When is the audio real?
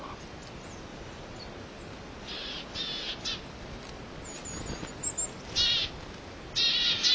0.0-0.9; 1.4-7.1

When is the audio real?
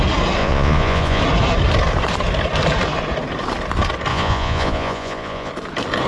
0.0-0.4; 1.2-4.1; 5.5-6.1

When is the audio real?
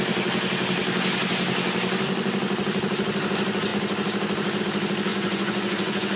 0.0-5.1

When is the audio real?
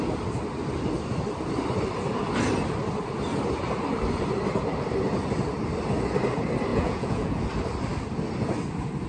0.0-6.7; 7.4-9.1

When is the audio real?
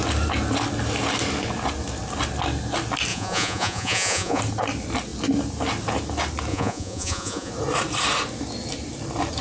0.0-3.1; 4.4-6.5; 7.5-9.4